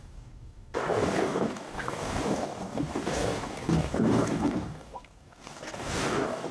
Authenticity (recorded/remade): remade